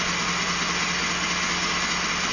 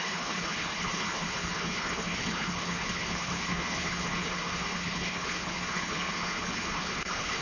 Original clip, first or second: first